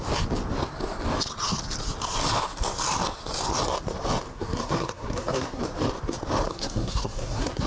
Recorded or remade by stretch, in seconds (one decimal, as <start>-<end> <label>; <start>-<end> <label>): 0.0-4.3 recorded; 4.3-5.6 remade; 5.6-6.5 recorded; 6.5-7.7 remade